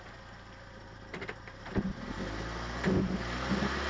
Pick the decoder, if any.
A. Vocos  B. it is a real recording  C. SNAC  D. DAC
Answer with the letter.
B